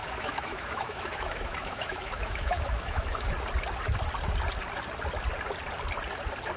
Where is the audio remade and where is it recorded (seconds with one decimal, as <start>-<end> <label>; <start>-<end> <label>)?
0.0-3.3 remade; 3.3-6.6 recorded